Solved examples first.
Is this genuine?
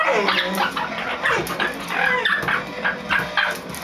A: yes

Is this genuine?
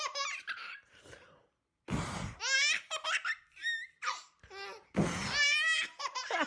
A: yes